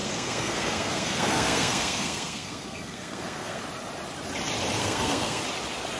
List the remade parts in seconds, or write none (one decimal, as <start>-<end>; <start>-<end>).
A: 0.0-3.6; 4.8-5.4